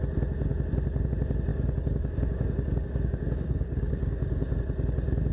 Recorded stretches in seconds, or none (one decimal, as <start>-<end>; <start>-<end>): 0.0-1.5; 4.6-5.3